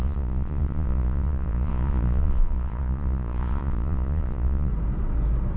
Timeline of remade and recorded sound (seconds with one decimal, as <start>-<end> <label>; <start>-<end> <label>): 0.0-4.7 remade; 4.7-5.6 recorded